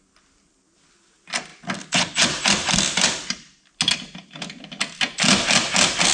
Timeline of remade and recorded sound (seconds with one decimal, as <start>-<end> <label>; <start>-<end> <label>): 0.0-6.1 recorded